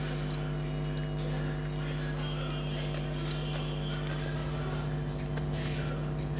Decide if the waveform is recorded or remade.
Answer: recorded